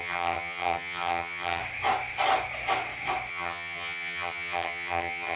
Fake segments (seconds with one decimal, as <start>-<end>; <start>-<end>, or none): 0.0-1.6; 3.3-5.4